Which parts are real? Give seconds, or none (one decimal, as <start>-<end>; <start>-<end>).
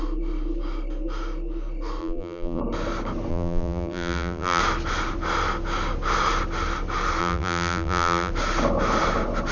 0.0-2.0; 2.6-3.3; 4.6-7.2; 8.3-9.5